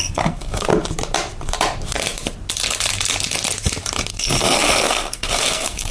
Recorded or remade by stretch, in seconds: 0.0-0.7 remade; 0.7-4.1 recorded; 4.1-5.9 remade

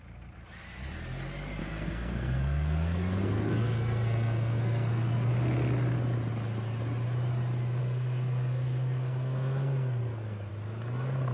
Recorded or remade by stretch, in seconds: 0.0-1.6 recorded; 1.6-5.3 remade; 5.3-7.8 recorded; 7.8-10.5 remade; 10.5-11.3 recorded

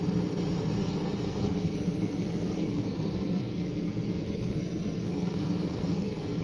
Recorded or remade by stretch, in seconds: 0.0-0.8 recorded; 0.8-4.6 remade; 4.6-5.0 recorded; 5.0-6.4 remade

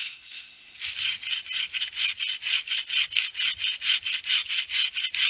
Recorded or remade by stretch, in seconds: 0.0-0.8 remade; 0.8-5.3 recorded